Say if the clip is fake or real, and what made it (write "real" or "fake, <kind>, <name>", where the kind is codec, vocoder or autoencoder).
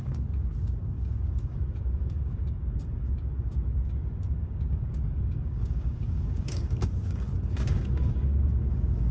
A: fake, codec, DAC